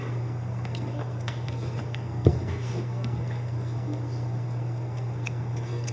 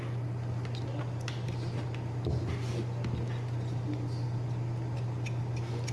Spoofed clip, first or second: first